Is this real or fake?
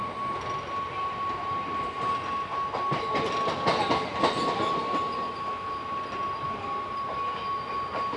real